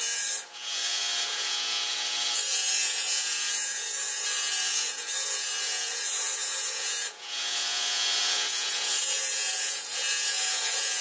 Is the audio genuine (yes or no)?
no